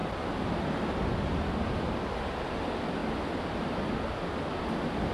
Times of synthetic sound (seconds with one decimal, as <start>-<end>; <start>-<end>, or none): none